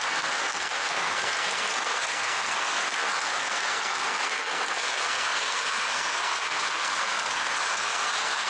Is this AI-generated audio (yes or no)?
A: yes